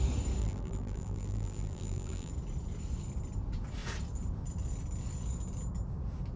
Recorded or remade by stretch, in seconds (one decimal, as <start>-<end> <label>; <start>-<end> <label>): 0.0-0.4 recorded; 0.4-2.3 remade; 2.3-6.4 recorded